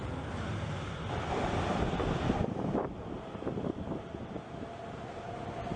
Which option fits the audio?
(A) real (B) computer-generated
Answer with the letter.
A